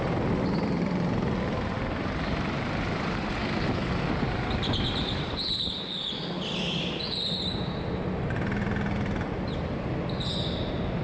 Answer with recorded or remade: recorded